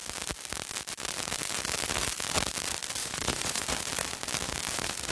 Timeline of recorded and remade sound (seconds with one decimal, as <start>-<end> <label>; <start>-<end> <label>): 0.0-3.0 recorded; 3.0-3.6 remade; 3.6-5.1 recorded